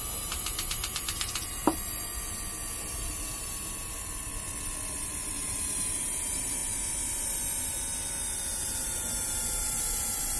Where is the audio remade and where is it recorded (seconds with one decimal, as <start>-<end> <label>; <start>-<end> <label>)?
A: 0.0-1.6 remade; 1.6-2.9 recorded; 2.9-4.3 remade; 4.3-5.0 recorded; 5.0-6.6 remade; 6.6-8.5 recorded; 8.5-10.4 remade